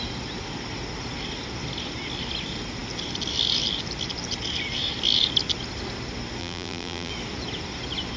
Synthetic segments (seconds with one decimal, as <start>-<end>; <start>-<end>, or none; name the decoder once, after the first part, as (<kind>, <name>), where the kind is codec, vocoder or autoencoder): 6.4-7.1 (vocoder, BigVGAN v2)